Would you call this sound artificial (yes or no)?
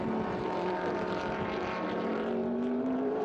yes